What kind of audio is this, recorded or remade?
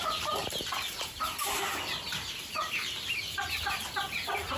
recorded